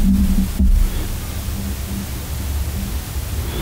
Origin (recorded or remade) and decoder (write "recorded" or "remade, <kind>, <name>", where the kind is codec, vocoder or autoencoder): recorded